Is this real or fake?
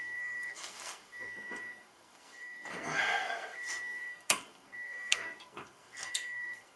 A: fake